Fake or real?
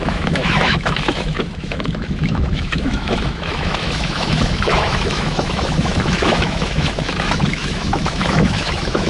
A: fake